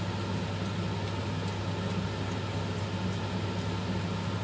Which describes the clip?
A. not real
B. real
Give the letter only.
B